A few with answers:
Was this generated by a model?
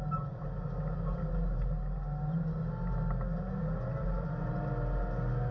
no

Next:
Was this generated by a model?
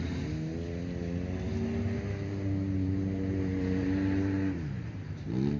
no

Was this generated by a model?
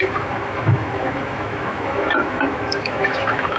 yes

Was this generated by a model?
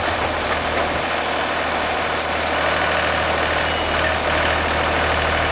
no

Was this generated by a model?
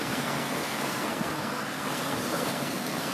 yes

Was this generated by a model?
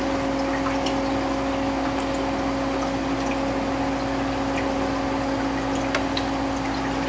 no